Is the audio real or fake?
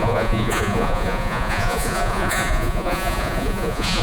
fake